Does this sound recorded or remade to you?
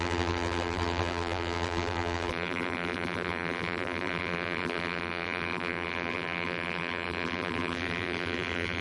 remade